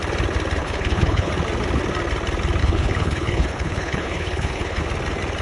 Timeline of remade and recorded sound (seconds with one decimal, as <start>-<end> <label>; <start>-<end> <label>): 0.0-0.6 recorded; 0.6-1.3 remade; 1.3-2.6 recorded; 2.6-4.8 remade; 4.8-5.4 recorded